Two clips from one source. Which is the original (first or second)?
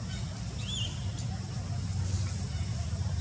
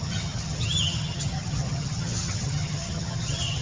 first